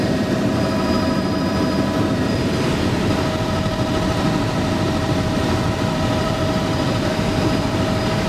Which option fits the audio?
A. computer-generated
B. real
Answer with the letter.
A